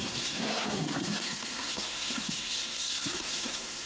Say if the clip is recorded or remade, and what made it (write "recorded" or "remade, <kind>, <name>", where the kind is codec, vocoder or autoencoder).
remade, codec, SNAC